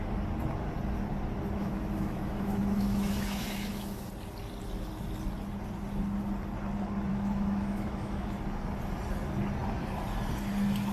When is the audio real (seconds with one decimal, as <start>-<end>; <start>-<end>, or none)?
0.0-1.6; 4.1-7.1; 8.4-10.9